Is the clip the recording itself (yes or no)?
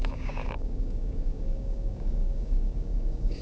no